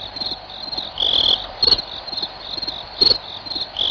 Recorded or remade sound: recorded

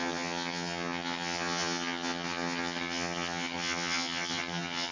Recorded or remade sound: remade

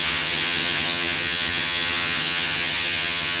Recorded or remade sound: remade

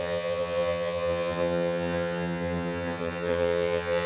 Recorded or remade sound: remade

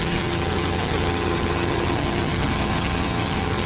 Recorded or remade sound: remade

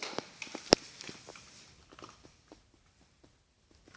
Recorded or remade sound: recorded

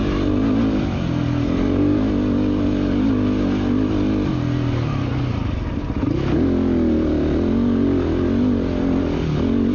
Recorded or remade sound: recorded